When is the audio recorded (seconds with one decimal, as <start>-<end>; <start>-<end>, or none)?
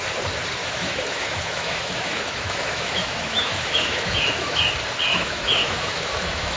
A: 0.0-0.6; 4.6-5.1